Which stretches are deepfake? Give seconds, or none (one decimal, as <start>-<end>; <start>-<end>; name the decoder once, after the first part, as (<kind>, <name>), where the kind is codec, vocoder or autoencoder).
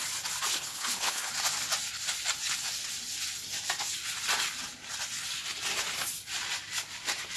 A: 0.5-1.3 (codec, HILCodec)